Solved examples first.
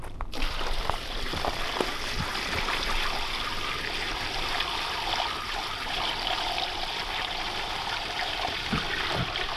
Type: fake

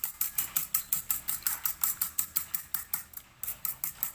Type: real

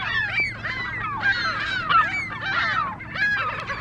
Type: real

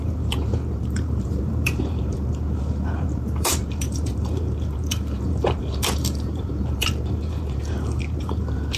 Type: fake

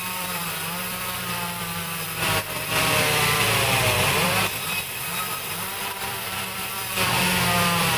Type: fake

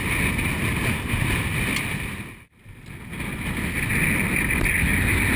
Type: real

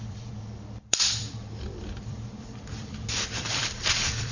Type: fake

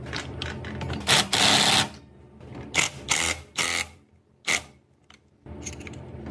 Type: real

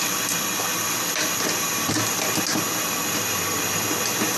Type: real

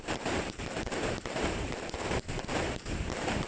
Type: fake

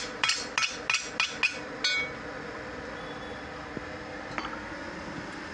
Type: real